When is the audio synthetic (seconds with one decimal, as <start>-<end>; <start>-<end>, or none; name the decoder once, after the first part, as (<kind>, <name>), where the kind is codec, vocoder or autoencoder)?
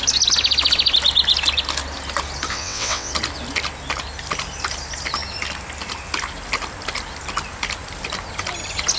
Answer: 2.5-3.1 (vocoder, WaveNeXt)